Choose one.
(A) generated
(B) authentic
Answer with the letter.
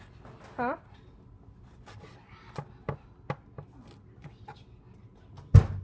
B